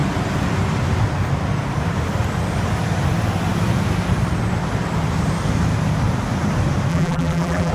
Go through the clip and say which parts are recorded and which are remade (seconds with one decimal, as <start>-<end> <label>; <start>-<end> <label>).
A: 0.0-6.9 recorded; 6.9-7.7 remade